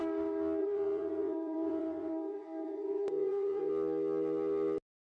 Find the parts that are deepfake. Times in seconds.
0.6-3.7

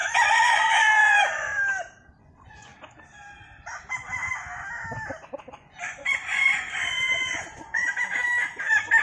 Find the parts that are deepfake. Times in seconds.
0.0-1.5; 2.2-2.7; 5.5-7.8

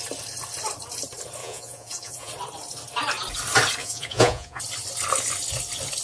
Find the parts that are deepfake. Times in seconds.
1.4-2.3; 3.8-4.6

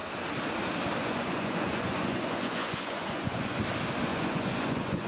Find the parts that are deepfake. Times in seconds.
1.0-3.6; 4.1-5.1

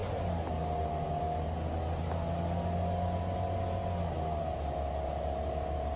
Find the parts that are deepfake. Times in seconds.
none

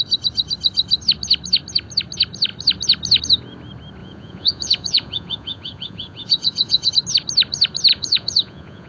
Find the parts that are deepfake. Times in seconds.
4.0-6.9; 7.9-8.9